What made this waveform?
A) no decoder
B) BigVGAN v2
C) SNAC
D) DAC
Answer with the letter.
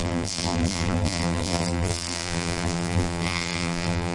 B